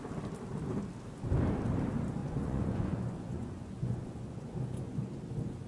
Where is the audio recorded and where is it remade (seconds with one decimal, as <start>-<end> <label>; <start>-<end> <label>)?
0.0-2.2 recorded; 2.2-5.2 remade; 5.2-5.7 recorded